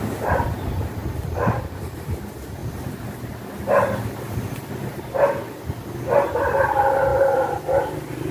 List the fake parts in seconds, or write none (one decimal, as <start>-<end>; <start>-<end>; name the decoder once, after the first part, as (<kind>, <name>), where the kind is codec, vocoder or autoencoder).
1.0-1.8 (vocoder, BigVGAN v2)